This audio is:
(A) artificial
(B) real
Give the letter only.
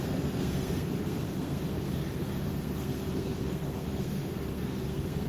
A